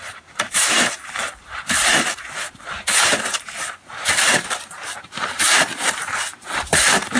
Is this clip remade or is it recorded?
remade